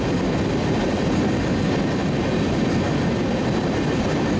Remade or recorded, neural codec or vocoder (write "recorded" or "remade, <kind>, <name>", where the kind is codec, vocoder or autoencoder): recorded